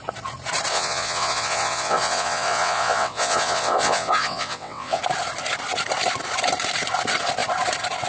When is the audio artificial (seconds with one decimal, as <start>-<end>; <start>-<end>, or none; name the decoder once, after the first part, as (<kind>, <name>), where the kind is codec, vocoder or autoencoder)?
0.7-5.0 (vocoder, WaveNeXt)